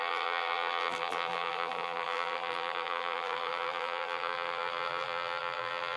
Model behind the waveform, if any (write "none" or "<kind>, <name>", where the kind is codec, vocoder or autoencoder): vocoder, BigVGAN v2